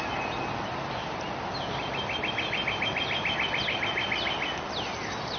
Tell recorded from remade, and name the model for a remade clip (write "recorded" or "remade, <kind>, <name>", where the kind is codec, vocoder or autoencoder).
recorded